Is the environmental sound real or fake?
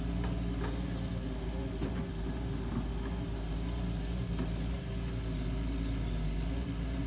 real